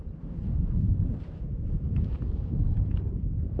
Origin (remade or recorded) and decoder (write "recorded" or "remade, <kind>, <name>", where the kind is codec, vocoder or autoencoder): remade, vocoder, BigVGAN v2